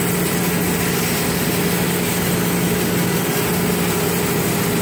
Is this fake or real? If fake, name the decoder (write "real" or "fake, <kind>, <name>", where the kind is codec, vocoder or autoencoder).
real